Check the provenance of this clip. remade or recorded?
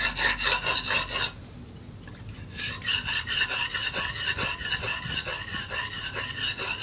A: recorded